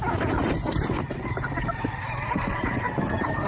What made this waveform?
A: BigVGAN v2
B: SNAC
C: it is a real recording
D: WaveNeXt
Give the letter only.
A